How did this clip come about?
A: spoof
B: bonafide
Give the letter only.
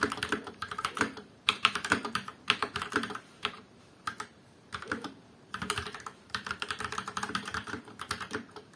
A